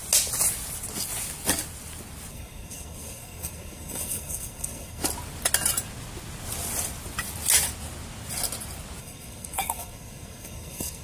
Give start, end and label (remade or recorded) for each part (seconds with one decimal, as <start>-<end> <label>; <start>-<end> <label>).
0.0-2.3 recorded; 2.3-5.0 remade; 5.0-9.0 recorded; 9.0-11.0 remade